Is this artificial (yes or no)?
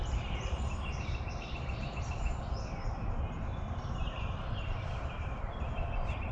yes